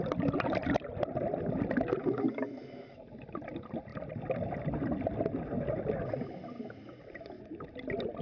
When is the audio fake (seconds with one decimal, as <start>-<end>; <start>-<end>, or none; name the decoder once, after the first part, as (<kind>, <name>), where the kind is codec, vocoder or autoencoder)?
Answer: none